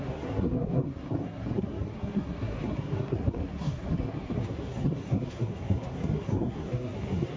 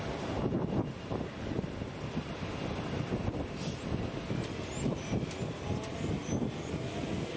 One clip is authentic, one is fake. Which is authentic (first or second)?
second